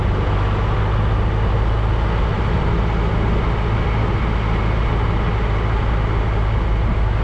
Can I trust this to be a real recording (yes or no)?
yes